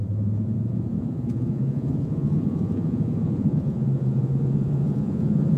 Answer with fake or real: fake